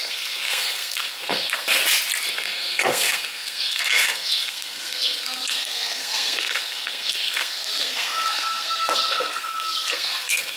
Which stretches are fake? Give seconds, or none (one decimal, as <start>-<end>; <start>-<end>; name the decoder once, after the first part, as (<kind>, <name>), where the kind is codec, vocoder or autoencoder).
0.0-1.8 (codec, SNAC); 2.3-10.6

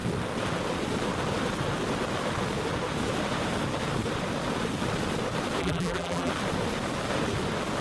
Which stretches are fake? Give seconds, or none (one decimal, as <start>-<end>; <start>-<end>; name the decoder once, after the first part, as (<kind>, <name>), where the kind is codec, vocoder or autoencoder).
5.6-6.3 (vocoder, BigVGAN v2)

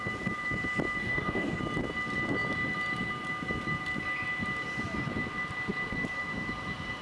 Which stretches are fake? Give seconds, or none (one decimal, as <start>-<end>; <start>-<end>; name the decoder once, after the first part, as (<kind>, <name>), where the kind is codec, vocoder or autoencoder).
1.0-1.6 (codec, DAC)

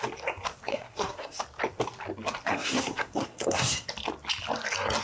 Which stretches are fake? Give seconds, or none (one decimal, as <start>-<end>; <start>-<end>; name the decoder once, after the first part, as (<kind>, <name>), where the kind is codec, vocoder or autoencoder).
0.7-1.4 (codec, SNAC); 2.5-3.9